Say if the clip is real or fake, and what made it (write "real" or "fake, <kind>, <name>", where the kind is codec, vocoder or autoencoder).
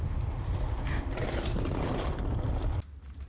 real